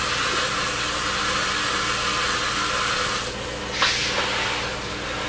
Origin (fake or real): real